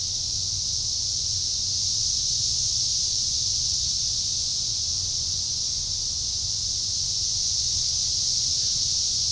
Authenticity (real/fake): fake